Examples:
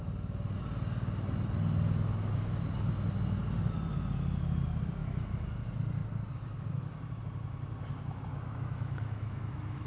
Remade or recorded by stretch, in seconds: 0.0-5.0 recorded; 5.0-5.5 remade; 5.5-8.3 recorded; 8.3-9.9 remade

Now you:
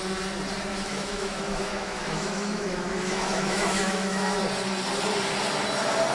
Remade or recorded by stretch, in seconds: 0.0-0.7 recorded; 0.7-4.4 remade; 4.4-6.1 recorded

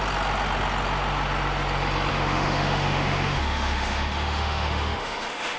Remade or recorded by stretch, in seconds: 0.0-2.1 recorded; 2.1-5.6 remade